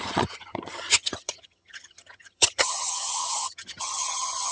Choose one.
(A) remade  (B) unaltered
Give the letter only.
A